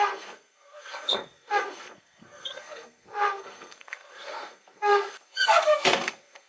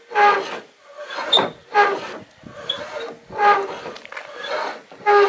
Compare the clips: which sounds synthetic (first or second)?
first